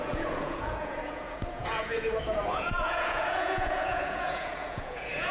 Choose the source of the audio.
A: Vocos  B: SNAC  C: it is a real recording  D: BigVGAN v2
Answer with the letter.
A